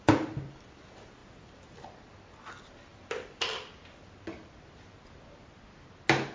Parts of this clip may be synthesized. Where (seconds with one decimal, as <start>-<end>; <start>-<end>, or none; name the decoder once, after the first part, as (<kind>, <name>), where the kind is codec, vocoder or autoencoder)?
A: none